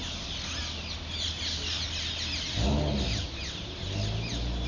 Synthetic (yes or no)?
no